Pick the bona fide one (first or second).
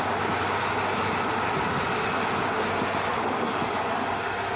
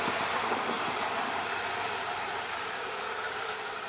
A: first